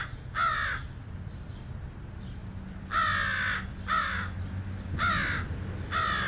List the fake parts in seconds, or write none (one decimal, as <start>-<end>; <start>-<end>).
none